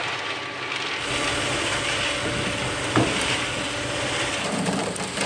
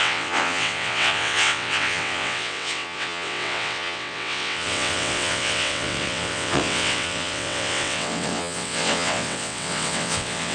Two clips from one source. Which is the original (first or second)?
first